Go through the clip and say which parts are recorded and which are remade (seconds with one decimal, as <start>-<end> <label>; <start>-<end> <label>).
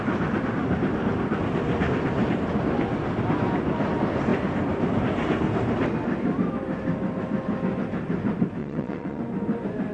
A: 0.0-8.6 recorded; 8.6-9.2 remade; 9.2-9.9 recorded